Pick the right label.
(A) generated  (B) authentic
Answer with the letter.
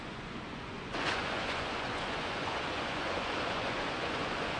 A